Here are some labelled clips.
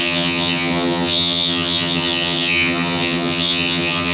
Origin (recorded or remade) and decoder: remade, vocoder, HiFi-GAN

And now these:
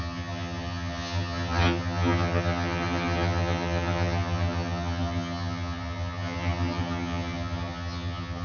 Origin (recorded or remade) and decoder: remade, vocoder, HiFi-GAN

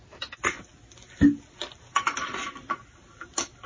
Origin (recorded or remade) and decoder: recorded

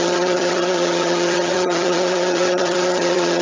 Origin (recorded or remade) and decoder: remade, vocoder, HiFi-GAN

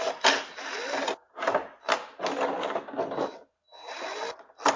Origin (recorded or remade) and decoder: recorded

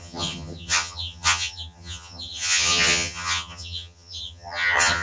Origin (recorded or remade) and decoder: remade, vocoder, HiFi-GAN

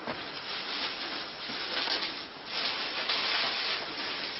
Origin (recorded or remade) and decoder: recorded